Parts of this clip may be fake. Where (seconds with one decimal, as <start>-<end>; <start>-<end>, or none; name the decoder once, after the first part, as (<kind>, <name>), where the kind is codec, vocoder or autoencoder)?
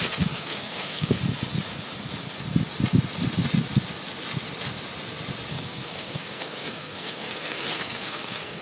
0.0-1.2 (codec, SNAC); 5.5-8.6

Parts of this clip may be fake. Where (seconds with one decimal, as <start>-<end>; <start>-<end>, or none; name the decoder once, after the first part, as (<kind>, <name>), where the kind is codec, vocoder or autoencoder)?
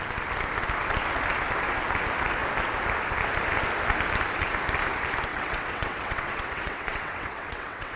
5.3-8.0 (vocoder, WaveNeXt)